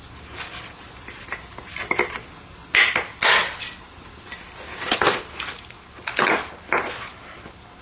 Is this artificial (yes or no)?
no